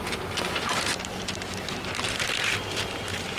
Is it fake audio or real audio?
fake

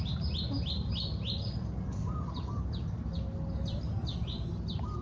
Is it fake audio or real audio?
real